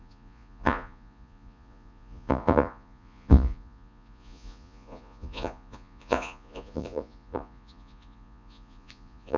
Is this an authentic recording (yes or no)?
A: no